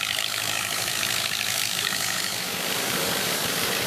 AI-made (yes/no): yes